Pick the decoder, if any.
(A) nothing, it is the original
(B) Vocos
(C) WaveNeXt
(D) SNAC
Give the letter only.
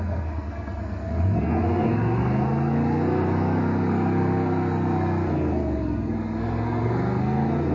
D